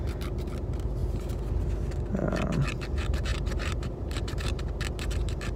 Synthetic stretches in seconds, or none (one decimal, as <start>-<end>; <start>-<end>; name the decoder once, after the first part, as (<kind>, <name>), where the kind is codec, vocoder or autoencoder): 3.3-4.6 (vocoder, BigVGAN v2)